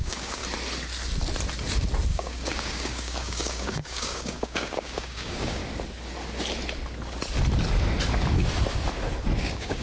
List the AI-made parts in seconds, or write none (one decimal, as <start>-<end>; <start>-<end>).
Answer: 0.0-0.4; 2.1-5.6; 9.4-9.8